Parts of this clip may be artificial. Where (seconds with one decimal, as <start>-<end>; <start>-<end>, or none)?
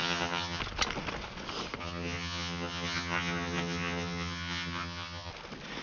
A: 0.0-0.6; 1.8-5.3